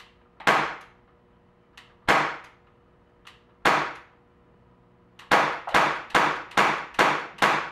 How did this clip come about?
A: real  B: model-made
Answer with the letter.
A